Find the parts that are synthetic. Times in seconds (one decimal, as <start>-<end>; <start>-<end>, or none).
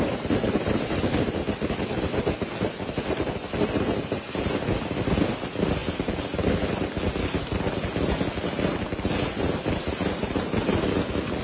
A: none